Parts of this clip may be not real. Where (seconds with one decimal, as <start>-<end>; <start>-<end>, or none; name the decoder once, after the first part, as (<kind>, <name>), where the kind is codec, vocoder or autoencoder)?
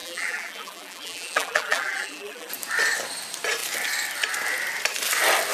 0.0-2.5 (vocoder, BigVGAN v2)